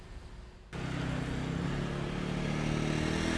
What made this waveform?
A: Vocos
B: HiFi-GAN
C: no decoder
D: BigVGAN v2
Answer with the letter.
C